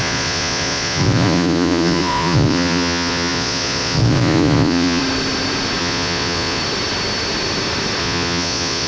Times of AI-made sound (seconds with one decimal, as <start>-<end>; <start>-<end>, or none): 0.0-5.0; 5.8-6.6; 8.0-8.9